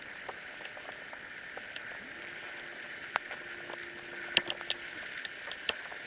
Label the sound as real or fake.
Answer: real